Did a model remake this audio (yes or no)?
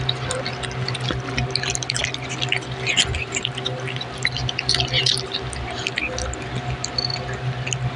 no